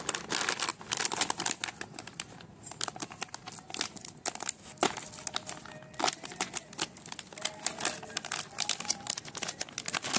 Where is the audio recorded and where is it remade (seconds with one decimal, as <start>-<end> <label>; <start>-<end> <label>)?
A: 0.0-10.2 recorded

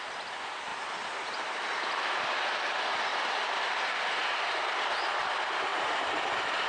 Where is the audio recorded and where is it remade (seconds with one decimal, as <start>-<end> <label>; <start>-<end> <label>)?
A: 0.0-0.7 remade; 0.7-1.7 recorded; 1.7-3.1 remade; 3.1-3.7 recorded; 3.7-4.2 remade; 4.2-4.7 recorded; 4.7-6.7 remade

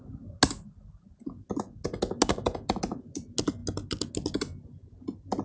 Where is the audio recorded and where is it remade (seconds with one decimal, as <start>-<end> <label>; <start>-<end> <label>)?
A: 0.0-5.4 recorded